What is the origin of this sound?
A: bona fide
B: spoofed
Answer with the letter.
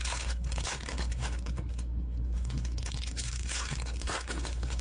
B